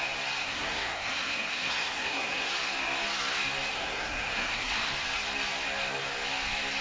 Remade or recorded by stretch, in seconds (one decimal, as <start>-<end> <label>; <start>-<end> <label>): 0.0-0.4 recorded; 0.4-2.5 remade; 2.5-3.7 recorded; 3.7-4.9 remade; 4.9-6.8 recorded